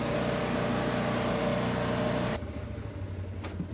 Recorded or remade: recorded